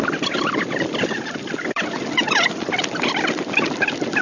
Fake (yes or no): yes